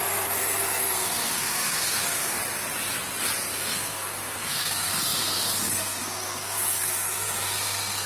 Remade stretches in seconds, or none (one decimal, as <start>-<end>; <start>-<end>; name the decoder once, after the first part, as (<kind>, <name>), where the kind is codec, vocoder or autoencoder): 0.0-2.4 (codec, SNAC); 3.5-8.1

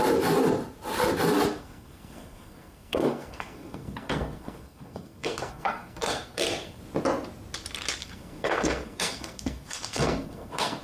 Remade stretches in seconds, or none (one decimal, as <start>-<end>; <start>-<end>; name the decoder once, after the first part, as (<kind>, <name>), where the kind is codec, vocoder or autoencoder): 1.6-6.8 (codec, SNAC); 8.0-10.8

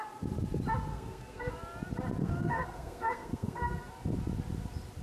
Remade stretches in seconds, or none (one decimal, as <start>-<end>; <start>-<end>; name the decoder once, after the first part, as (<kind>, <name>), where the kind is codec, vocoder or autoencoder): 0.9-1.5 (codec, SNAC); 2.2-3.9

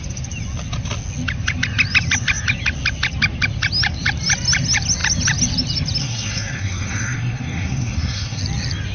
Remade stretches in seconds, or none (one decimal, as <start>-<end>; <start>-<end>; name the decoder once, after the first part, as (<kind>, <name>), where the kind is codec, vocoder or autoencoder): 6.0-8.4 (codec, SNAC)

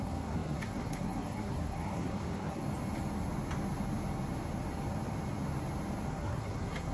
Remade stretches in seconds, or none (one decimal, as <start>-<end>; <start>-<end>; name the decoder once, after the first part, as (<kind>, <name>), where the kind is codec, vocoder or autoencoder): 0.0-2.6 (codec, SNAC); 6.1-6.9

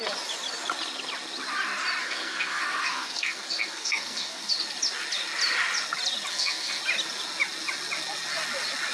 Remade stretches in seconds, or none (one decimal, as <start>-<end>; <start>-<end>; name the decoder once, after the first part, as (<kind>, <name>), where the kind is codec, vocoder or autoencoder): 2.0-4.5 (codec, SNAC); 6.3-6.8